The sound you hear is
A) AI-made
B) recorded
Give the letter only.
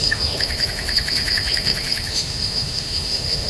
A